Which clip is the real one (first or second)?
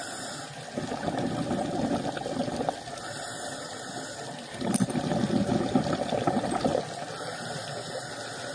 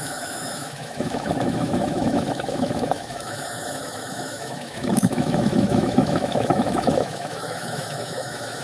first